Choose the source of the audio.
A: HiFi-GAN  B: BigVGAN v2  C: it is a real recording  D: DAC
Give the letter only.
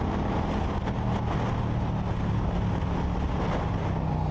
C